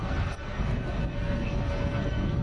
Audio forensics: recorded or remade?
remade